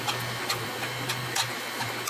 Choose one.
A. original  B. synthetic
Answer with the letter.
A